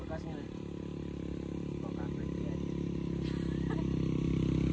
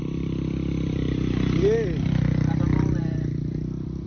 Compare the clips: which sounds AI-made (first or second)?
second